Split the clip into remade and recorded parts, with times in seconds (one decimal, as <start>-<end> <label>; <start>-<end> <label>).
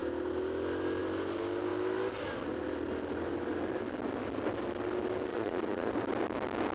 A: 0.0-5.3 recorded; 5.3-5.9 remade; 5.9-6.7 recorded